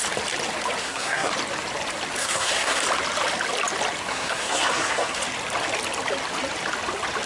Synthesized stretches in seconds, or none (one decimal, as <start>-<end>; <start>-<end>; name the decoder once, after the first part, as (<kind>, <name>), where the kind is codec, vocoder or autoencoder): 0.8-1.3 (codec, SNAC); 2.2-2.8; 4.1-5.2